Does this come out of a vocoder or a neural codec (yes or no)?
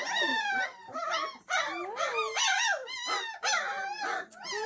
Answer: no